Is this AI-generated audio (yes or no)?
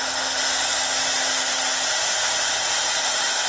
no